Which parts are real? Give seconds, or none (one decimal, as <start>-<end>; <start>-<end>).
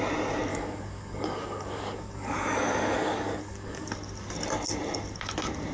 0.0-0.5; 3.9-5.7